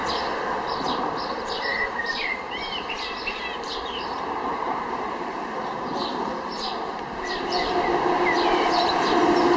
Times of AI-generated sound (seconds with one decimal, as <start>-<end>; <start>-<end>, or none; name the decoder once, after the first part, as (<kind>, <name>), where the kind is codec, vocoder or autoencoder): 0.9-9.6 (vocoder, BigVGAN v2)